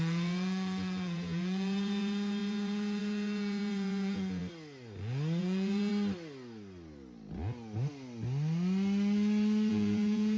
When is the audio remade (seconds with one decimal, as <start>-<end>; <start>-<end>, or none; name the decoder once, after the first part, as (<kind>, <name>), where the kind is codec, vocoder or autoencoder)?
0.0-4.4 (vocoder, Vocos); 5.4-5.9; 9.7-10.4

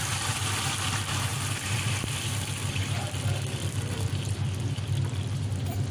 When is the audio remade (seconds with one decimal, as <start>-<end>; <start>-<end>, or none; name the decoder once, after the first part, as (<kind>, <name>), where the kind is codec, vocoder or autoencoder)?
1.3-2.2 (vocoder, BigVGAN v2)

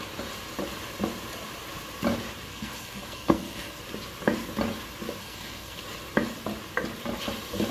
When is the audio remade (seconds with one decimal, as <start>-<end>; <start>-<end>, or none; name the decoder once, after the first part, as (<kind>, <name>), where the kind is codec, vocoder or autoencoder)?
2.5-3.8 (codec, SNAC); 5.2-5.8

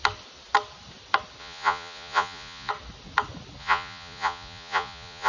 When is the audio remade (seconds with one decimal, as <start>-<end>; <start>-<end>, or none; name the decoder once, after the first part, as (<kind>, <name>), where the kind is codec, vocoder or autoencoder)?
1.4-2.7 (vocoder, Vocos); 3.6-5.3

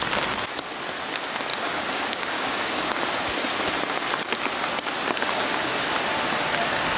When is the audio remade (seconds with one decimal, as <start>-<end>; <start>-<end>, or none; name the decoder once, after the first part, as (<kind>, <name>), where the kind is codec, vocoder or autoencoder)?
1.5-3.0 (codec, DAC)

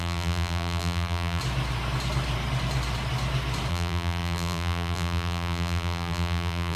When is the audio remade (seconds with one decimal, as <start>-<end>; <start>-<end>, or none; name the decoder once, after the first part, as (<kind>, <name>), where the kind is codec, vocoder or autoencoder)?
0.0-1.4 (vocoder, BigVGAN v2); 3.7-6.8